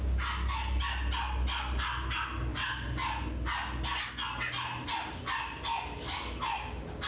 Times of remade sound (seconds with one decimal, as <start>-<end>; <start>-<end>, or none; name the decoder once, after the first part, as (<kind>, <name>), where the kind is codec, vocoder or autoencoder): none